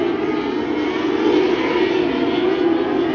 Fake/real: real